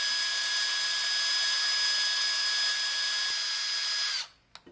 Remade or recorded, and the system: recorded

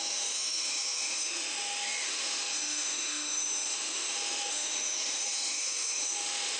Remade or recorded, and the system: remade, autoencoder, DAC-VAE